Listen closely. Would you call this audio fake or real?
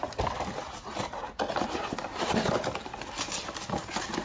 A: real